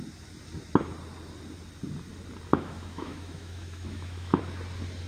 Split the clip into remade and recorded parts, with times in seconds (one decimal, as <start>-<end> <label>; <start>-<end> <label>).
0.0-2.5 recorded; 2.5-4.4 remade; 4.4-5.1 recorded